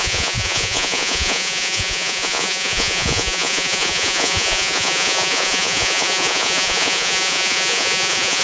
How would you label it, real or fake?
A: fake